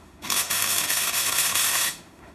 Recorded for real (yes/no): no